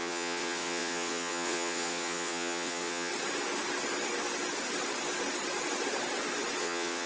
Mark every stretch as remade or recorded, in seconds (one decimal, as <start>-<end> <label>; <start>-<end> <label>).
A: 0.0-3.1 remade; 3.1-6.6 recorded; 6.6-7.1 remade